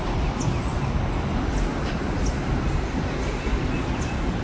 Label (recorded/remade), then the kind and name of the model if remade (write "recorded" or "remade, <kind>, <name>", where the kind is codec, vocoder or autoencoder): recorded